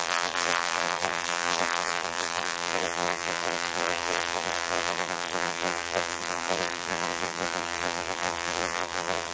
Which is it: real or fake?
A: fake